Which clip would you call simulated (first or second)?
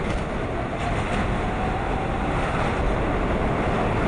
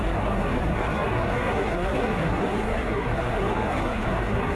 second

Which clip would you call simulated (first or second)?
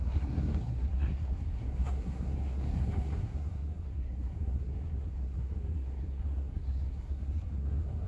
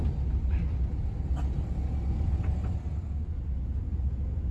first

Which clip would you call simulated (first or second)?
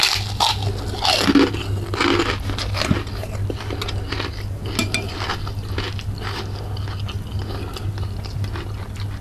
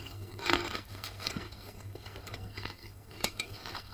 second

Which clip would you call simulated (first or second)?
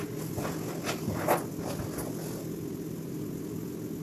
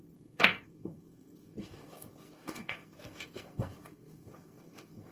second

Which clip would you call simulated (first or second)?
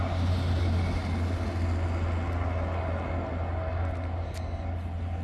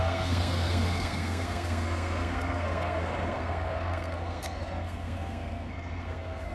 second